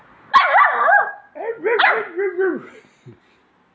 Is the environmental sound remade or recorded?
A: recorded